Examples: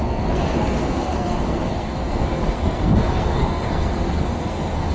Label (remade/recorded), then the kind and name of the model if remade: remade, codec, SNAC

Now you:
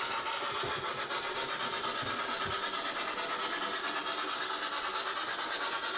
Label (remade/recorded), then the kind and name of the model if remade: recorded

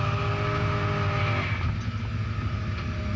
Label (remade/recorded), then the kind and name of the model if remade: recorded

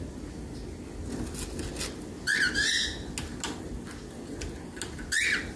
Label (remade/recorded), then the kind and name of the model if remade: recorded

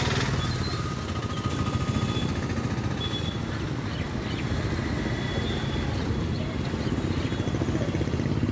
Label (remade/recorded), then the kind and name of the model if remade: recorded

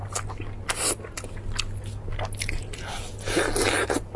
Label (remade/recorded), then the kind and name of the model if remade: recorded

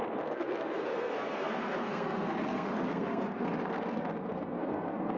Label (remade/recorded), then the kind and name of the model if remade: remade, codec, SNAC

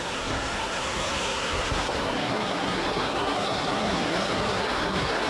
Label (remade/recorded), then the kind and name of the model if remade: remade, codec, SNAC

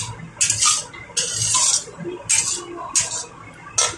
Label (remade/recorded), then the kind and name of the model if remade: recorded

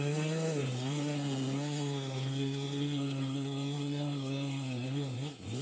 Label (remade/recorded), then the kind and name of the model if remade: remade, codec, SNAC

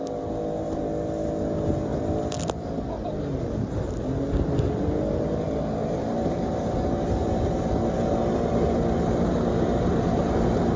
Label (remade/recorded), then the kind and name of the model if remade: recorded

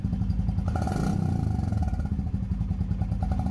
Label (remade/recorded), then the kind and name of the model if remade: recorded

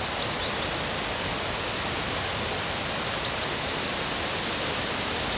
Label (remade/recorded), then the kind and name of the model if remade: recorded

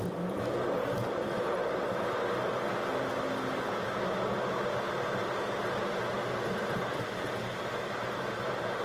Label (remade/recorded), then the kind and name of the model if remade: recorded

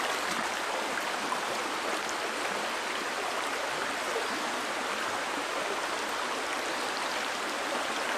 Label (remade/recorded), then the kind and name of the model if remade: recorded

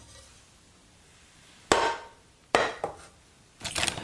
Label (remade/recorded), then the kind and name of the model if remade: recorded